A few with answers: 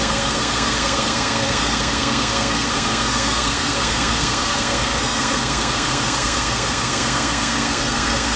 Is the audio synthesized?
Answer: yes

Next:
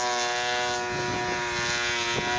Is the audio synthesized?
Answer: no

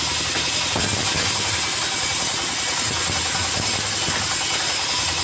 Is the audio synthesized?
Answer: no